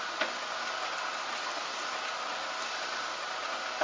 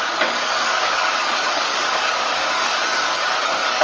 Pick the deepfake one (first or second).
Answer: second